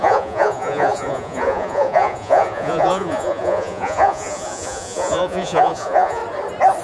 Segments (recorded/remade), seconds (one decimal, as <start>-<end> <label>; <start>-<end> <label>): 0.0-6.2 remade; 6.2-6.8 recorded